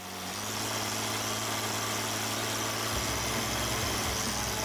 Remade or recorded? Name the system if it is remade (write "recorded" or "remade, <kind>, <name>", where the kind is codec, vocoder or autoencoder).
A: recorded